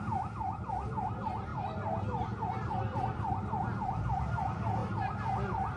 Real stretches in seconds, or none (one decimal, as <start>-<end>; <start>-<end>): 0.0-5.8